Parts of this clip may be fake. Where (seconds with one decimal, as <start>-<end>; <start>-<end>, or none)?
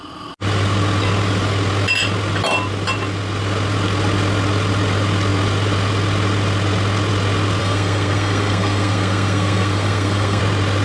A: 7.6-10.4